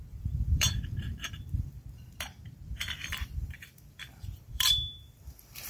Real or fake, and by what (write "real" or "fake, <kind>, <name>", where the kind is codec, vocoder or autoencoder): fake, vocoder, BigVGAN v2